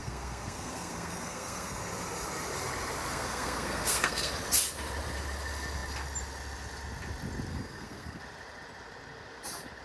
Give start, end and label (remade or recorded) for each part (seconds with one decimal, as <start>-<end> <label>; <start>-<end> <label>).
0.0-1.8 remade; 1.8-3.1 recorded; 3.1-4.3 remade; 4.3-7.5 recorded; 7.5-8.2 remade; 8.2-9.8 recorded